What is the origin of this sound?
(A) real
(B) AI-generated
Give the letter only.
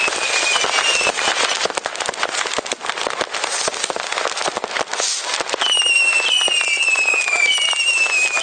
A